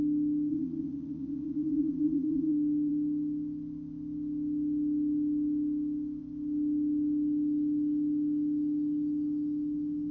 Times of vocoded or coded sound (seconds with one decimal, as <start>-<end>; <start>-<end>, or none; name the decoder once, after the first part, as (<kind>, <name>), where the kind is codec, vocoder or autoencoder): 0.5-2.5 (vocoder, Vocos)